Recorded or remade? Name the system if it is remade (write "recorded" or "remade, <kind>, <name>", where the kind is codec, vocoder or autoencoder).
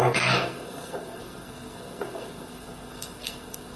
remade, codec, SNAC